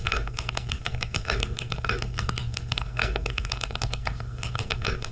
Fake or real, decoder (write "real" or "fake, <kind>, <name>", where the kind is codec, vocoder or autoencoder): fake, codec, SNAC